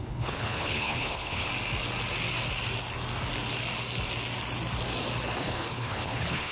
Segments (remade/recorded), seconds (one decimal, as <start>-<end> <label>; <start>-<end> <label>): 0.0-1.5 remade; 1.5-5.4 recorded; 5.4-6.5 remade

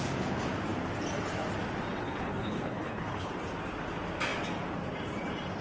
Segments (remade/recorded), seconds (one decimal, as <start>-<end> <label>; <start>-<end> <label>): 0.0-2.0 recorded; 2.0-3.3 remade; 3.3-5.6 recorded

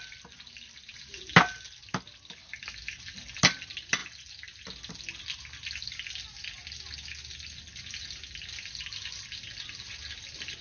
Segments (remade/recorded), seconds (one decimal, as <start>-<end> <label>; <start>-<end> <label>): 0.0-10.6 recorded

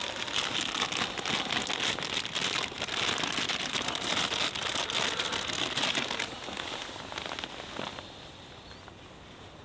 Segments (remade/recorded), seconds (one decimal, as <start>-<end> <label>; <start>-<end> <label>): 0.0-9.6 recorded

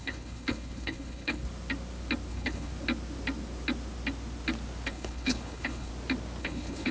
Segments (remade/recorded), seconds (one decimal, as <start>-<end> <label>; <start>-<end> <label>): 0.0-1.4 remade; 1.4-2.3 recorded; 2.3-2.7 remade; 2.7-4.9 recorded; 4.9-5.9 remade; 5.9-6.4 recorded; 6.4-6.9 remade